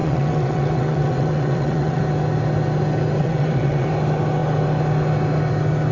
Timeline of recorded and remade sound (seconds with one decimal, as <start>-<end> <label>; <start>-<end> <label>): 0.0-2.0 remade; 2.0-3.2 recorded; 3.2-3.9 remade; 3.9-5.9 recorded